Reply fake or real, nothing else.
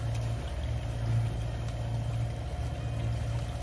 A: real